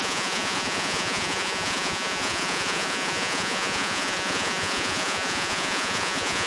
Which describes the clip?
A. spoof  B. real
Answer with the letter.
A